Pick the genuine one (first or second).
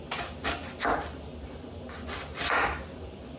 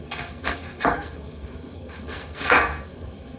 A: first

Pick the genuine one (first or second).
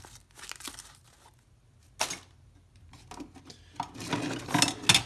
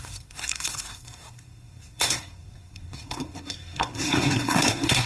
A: first